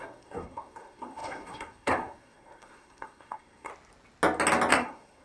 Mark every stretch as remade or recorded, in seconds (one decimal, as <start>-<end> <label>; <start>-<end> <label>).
0.0-3.7 remade; 3.7-4.7 recorded; 4.7-5.2 remade